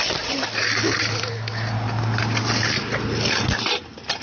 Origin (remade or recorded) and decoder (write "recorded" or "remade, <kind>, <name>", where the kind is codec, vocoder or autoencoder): recorded